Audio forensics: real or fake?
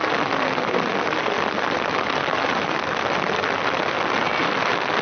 real